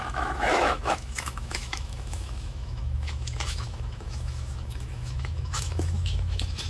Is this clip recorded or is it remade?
remade